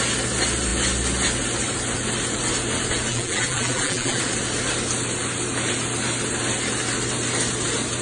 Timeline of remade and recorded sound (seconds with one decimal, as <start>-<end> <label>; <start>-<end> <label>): 0.0-3.1 recorded; 3.1-4.2 remade; 4.2-8.0 recorded